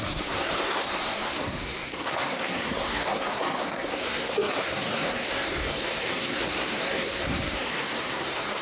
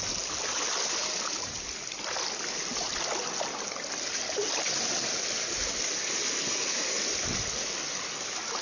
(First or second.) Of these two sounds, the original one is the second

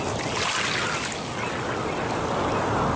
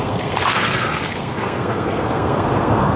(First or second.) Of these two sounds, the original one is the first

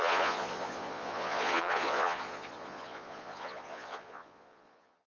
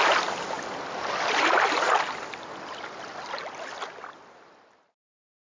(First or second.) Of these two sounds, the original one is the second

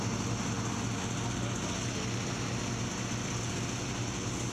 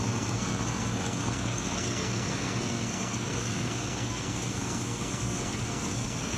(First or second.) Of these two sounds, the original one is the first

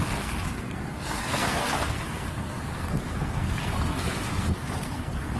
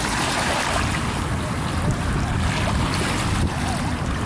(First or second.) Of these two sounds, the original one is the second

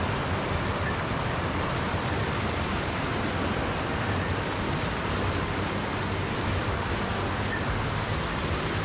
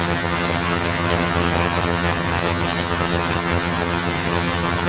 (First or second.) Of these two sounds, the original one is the first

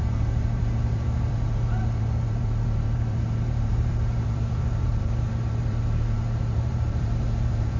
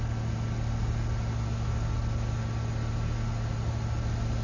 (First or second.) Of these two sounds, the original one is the second